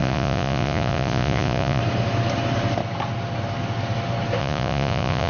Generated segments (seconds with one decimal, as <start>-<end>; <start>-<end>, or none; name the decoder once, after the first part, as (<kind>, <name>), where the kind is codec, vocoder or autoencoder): 0.0-1.8 (vocoder, Vocos); 4.4-5.3

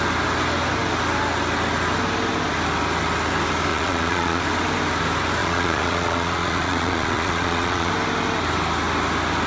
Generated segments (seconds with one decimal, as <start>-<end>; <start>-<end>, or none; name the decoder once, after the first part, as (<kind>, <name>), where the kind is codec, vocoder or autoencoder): 3.7-4.4 (vocoder, Vocos); 5.4-7.9

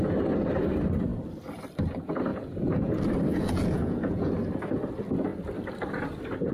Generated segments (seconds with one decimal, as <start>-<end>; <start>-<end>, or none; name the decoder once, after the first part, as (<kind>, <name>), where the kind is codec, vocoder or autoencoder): 2.3-2.9 (vocoder, Vocos); 3.3-4.3

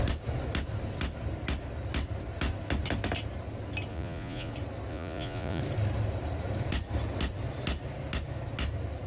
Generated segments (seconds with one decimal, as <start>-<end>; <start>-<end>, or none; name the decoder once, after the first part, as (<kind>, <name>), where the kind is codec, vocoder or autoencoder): 3.9-4.5 (vocoder, Vocos); 4.9-5.6

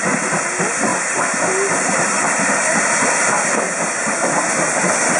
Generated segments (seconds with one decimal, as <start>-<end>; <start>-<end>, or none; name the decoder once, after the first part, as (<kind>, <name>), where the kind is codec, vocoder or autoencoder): none

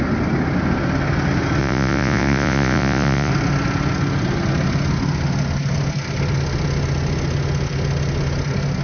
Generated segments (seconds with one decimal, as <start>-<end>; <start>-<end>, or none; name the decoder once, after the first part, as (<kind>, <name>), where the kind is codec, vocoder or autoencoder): 1.6-3.3 (vocoder, Vocos)